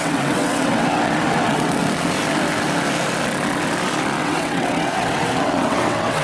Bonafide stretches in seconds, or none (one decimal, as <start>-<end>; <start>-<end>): 1.8-4.2